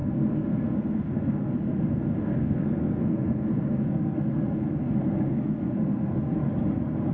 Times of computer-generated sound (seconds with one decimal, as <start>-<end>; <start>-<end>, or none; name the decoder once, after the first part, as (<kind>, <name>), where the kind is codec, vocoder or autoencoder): 0.0-1.8 (codec, SNAC); 2.3-6.2